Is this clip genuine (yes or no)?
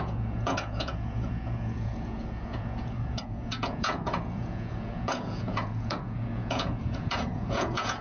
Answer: no